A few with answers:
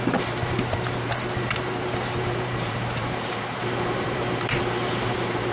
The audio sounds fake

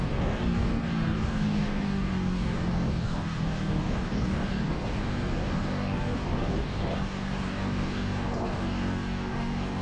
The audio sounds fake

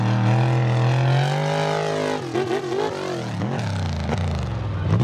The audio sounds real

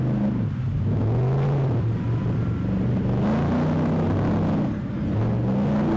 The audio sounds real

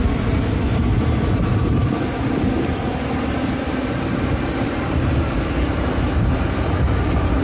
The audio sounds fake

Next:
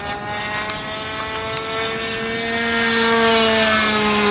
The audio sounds real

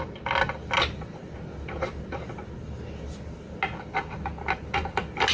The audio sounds real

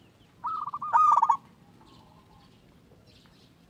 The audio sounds real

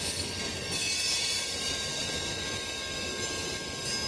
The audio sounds real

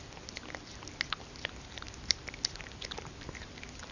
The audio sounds real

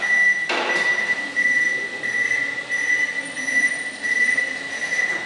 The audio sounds real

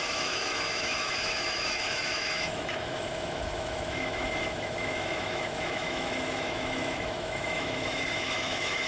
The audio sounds fake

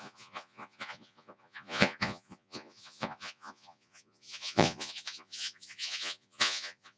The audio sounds fake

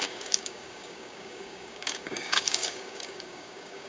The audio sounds fake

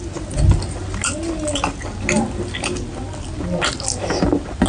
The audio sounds real